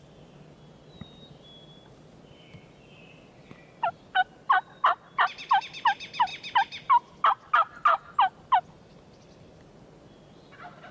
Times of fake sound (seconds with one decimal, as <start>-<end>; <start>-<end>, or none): none